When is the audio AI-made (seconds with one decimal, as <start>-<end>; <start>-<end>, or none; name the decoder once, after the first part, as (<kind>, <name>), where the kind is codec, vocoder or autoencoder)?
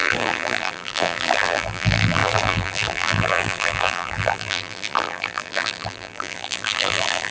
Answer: 0.0-7.3 (vocoder, BigVGAN v2)